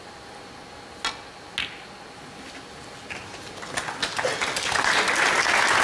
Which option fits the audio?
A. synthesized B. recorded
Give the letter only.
B